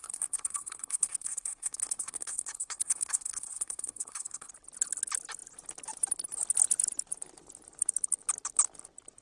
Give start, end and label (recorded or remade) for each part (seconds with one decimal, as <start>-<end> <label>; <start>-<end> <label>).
0.0-4.5 remade; 4.5-9.2 recorded